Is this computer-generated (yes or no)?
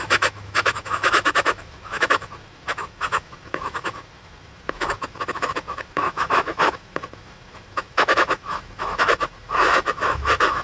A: yes